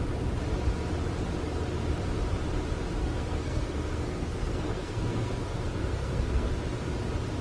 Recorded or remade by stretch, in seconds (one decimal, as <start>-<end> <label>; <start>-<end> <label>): 0.0-3.0 recorded; 3.0-6.5 remade; 6.5-7.4 recorded